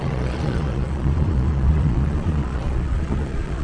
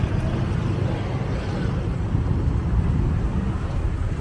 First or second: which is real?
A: second